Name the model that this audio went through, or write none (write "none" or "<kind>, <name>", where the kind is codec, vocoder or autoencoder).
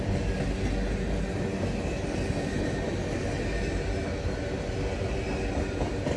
none